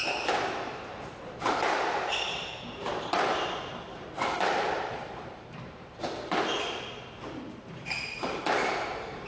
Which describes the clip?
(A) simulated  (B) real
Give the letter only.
A